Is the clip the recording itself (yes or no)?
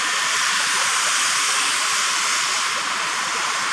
yes